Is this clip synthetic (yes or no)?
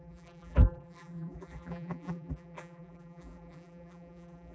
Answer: yes